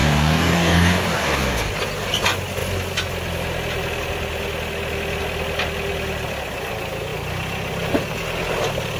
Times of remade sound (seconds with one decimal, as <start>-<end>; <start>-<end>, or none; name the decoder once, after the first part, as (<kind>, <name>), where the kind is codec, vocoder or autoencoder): 0.0-1.7 (codec, DAC)